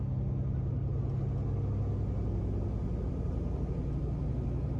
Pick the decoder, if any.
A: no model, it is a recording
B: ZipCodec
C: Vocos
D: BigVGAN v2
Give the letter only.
A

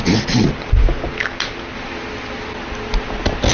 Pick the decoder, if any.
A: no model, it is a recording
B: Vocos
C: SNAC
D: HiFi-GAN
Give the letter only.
A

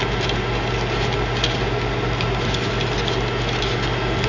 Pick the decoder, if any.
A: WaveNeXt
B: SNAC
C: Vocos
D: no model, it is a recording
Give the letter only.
D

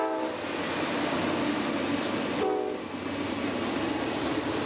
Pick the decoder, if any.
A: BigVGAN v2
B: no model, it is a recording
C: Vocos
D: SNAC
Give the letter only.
B